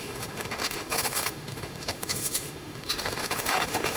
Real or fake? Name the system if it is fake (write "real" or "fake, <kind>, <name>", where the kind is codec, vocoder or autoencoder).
fake, autoencoder, DAC-VAE